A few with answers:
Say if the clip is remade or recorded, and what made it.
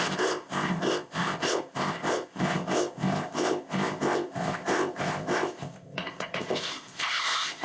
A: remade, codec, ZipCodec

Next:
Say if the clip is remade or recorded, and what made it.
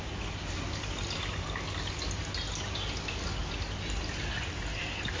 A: recorded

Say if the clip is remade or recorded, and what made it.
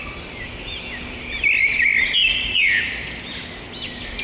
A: recorded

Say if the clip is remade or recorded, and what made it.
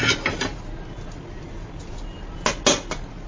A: recorded